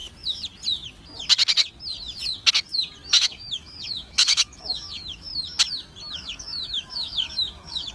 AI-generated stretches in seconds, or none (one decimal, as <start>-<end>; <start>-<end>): 3.1-5.3; 6.1-7.9